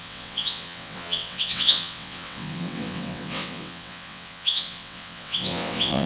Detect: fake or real fake